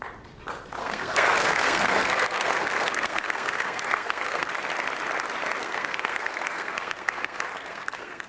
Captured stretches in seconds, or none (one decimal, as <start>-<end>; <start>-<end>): 0.0-0.8; 4.5-5.6

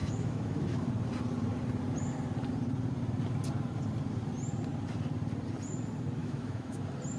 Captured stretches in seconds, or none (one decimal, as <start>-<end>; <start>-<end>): 0.9-6.2; 6.8-7.2

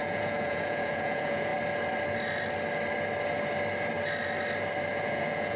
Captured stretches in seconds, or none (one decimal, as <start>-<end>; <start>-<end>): 1.5-4.9

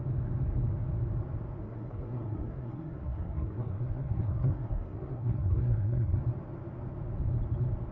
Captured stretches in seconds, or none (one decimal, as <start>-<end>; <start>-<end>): 0.0-1.6; 6.2-7.9

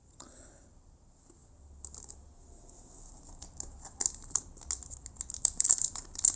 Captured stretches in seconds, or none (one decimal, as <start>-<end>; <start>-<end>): 0.0-6.4

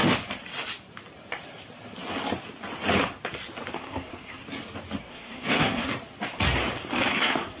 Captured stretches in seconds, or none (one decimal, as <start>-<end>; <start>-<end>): 0.0-3.7; 4.4-5.1; 5.9-7.1

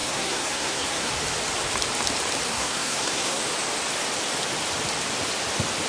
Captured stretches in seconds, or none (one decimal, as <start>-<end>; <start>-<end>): 1.1-2.5; 3.4-5.9